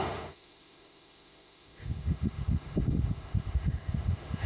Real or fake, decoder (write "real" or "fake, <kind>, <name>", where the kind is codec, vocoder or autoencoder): fake, autoencoder, DAC-VAE